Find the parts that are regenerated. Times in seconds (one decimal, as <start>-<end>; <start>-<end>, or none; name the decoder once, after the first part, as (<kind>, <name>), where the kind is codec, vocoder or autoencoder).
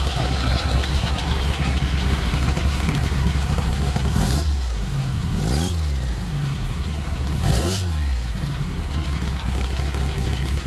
0.0-5.4 (codec, SNAC); 6.1-10.7